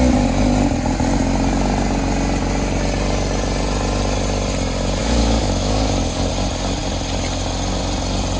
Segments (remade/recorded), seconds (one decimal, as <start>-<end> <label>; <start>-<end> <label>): 0.0-5.0 recorded; 5.0-6.3 remade; 6.3-8.4 recorded

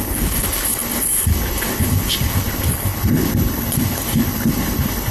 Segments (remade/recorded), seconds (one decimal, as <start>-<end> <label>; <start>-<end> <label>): 0.0-5.1 remade

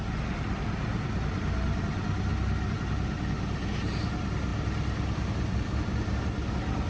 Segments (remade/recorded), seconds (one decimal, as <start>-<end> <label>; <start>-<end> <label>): 0.0-6.9 recorded

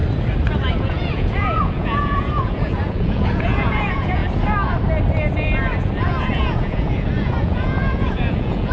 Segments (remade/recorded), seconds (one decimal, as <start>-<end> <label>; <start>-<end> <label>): 0.0-0.8 recorded; 0.8-4.2 remade; 4.2-6.3 recorded; 6.3-8.7 remade

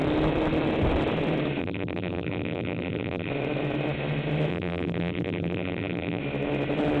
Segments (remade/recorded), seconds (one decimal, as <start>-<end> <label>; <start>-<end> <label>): 0.0-1.6 recorded; 1.6-3.3 remade; 3.3-4.5 recorded; 4.5-6.2 remade; 6.2-7.0 recorded

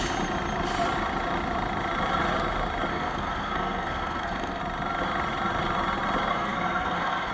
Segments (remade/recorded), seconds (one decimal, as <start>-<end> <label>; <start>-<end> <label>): 0.0-2.9 recorded; 2.9-4.6 remade; 4.6-6.3 recorded; 6.3-7.3 remade